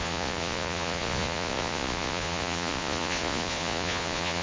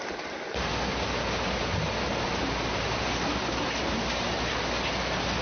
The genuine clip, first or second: second